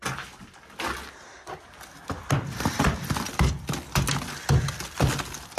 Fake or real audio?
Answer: real